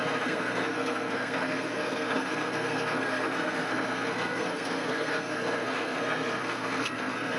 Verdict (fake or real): fake